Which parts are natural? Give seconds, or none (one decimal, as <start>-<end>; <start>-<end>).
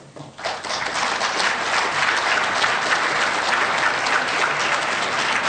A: 0.0-5.5